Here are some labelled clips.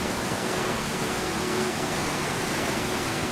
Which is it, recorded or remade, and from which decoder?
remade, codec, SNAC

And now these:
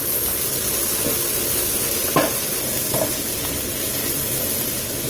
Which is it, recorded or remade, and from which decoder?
recorded